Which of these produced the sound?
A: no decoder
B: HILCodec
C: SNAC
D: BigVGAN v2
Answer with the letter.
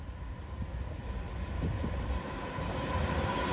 A